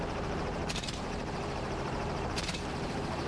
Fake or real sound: fake